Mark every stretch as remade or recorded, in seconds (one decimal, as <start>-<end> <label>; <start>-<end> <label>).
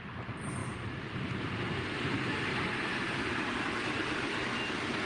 0.0-0.6 recorded; 0.6-1.6 remade; 1.6-5.1 recorded